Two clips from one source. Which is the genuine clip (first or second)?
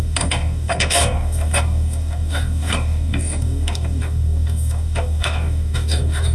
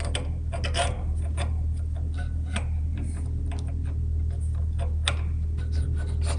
second